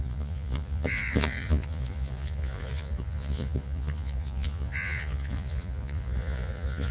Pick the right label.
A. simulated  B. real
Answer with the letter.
A